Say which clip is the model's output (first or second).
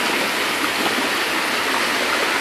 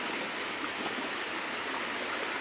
second